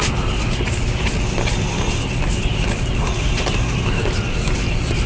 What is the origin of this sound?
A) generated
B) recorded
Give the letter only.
B